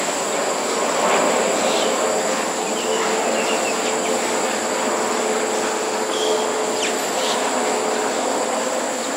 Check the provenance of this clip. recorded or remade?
recorded